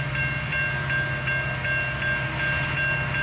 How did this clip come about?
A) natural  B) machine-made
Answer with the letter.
A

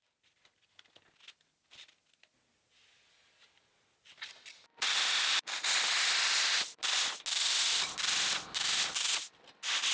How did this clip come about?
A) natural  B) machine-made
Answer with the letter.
A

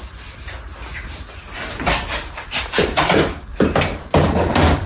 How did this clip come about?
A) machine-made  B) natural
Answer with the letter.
B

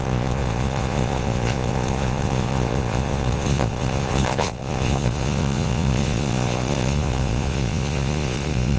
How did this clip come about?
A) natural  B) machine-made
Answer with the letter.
B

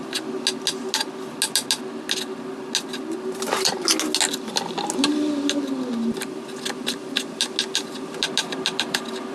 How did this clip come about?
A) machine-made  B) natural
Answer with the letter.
B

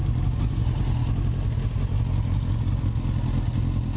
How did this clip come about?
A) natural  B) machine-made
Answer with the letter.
A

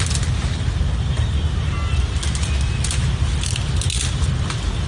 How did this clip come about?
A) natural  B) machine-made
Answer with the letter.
A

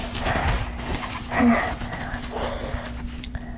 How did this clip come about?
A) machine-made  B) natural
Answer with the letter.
B